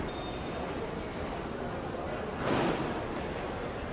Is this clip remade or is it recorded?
recorded